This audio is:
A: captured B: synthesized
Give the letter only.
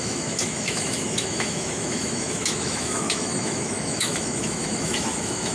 B